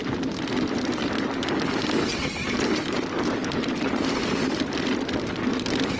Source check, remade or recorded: recorded